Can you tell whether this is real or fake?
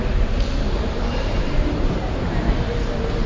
fake